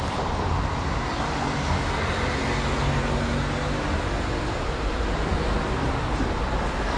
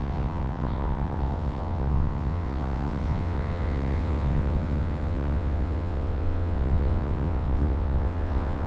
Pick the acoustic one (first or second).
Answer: first